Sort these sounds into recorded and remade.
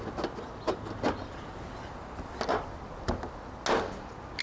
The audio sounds recorded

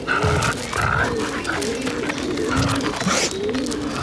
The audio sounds recorded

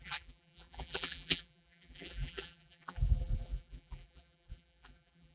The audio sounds remade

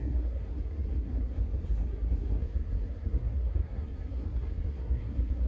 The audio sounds remade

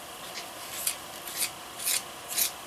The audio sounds recorded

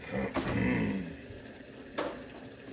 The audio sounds recorded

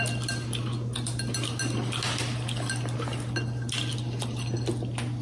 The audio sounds recorded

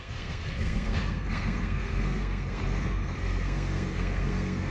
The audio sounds remade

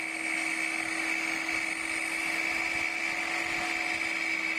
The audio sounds recorded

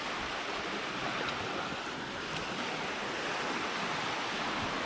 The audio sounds remade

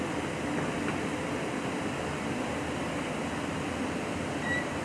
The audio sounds recorded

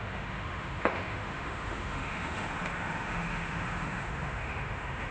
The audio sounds remade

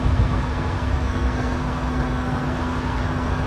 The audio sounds remade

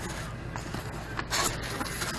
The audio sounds recorded